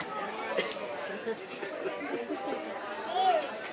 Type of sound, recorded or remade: recorded